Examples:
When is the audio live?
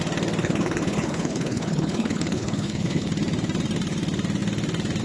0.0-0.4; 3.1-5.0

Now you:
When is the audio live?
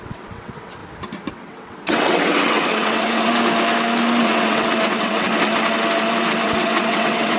0.8-1.3; 3.3-4.2; 5.3-6.4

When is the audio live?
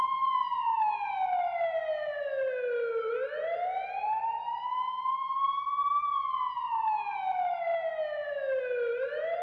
0.0-9.4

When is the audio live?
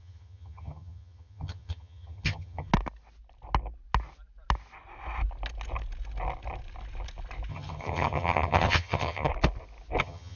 2.7-7.5; 9.3-10.0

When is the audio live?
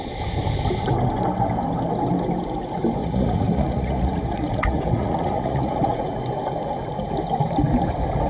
0.0-3.0; 6.2-8.3